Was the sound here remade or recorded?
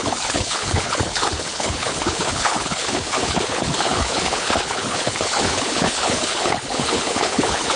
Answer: remade